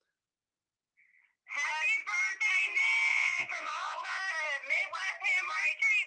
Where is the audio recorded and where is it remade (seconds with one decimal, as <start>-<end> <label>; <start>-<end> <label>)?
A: 0.0-3.1 recorded; 3.1-4.2 remade; 4.2-6.1 recorded